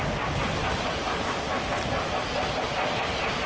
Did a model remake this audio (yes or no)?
no